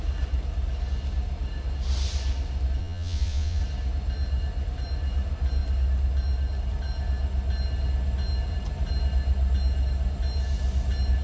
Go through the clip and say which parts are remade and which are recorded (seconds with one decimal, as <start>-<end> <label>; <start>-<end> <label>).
0.0-2.8 recorded; 2.8-3.6 remade; 3.6-11.2 recorded